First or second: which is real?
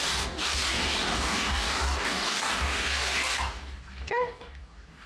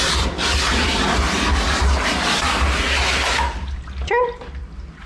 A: second